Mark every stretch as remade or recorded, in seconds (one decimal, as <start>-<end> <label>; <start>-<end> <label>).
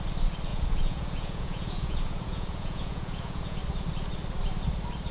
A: 0.0-0.5 recorded; 0.5-3.6 remade; 3.6-5.1 recorded